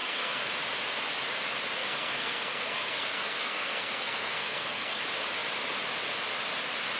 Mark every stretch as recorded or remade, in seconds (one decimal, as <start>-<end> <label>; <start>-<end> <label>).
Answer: 0.0-0.5 remade; 0.5-1.8 recorded; 1.8-5.0 remade; 5.0-7.0 recorded